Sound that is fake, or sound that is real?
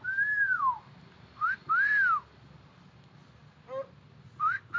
real